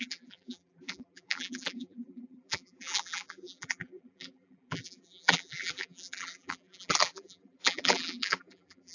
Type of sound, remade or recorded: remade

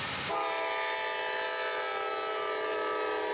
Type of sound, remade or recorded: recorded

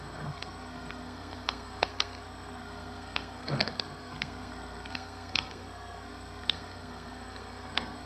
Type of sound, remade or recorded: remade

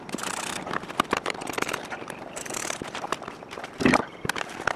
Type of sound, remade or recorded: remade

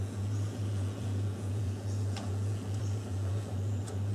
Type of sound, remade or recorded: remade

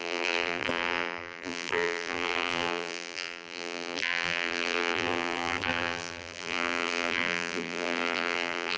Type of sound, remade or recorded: remade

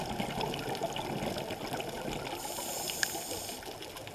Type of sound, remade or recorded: recorded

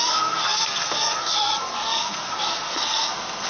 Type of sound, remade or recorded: remade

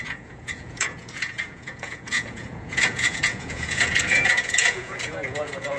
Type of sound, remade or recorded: remade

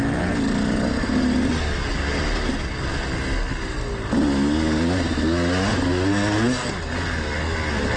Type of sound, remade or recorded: recorded